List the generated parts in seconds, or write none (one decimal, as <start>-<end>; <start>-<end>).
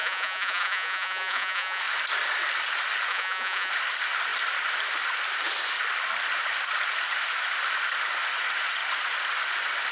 0.0-1.8; 3.1-3.7